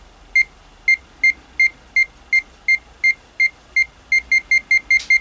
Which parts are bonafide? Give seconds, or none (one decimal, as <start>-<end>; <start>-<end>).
0.0-5.2